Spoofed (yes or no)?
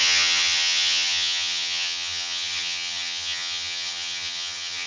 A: yes